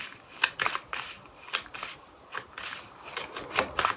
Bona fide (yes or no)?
yes